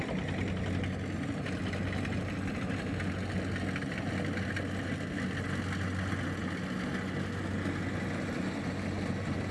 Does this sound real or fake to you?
real